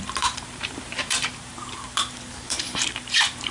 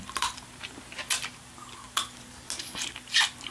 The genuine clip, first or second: second